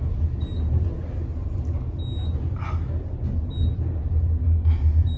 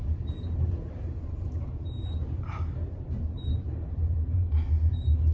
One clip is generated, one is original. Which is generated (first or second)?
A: second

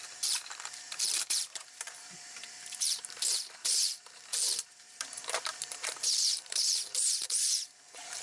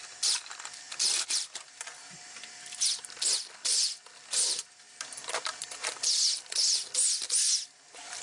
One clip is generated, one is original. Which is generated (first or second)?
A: first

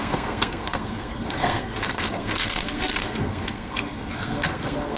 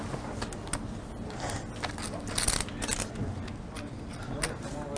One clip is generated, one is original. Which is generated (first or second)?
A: first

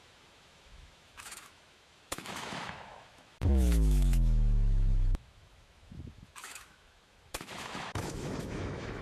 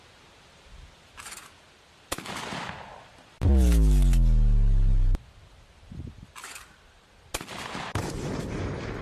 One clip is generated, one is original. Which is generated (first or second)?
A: first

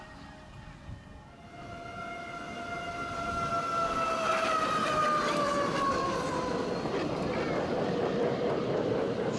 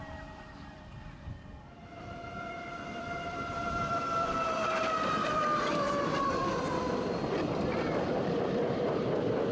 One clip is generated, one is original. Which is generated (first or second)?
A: second